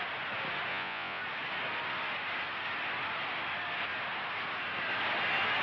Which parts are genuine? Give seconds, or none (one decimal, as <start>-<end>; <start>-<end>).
0.0-0.7; 1.2-5.6